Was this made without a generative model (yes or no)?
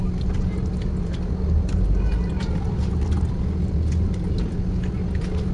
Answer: yes